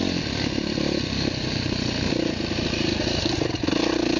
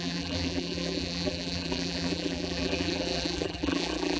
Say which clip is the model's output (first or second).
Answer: second